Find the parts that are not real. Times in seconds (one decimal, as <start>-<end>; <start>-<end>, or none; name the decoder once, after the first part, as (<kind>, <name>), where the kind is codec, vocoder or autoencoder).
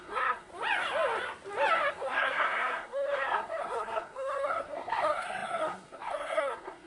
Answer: 0.0-0.5 (codec, SNAC); 1.9-6.9